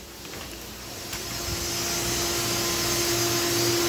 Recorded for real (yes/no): yes